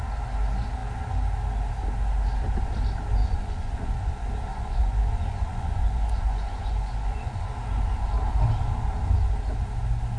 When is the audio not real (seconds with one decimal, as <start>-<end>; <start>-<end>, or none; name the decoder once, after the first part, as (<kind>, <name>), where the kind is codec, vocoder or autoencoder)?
3.2-4.1 (vocoder, Vocos); 4.5-7.5